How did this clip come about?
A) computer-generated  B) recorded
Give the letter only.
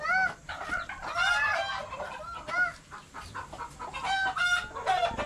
B